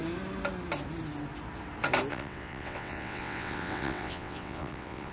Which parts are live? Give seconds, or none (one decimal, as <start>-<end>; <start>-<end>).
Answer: 0.0-2.1